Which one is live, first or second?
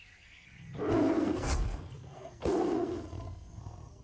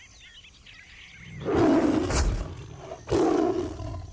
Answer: second